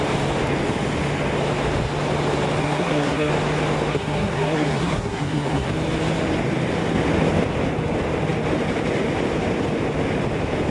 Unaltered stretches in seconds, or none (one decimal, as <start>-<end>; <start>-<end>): 0.0-2.6; 3.3-3.9; 5.7-10.7